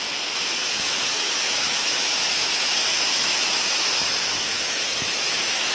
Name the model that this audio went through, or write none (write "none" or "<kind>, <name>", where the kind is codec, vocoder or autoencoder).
autoencoder, DAC-VAE